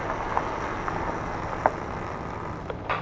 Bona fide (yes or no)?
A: yes